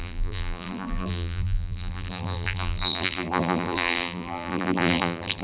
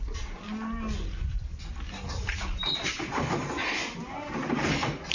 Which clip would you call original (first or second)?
second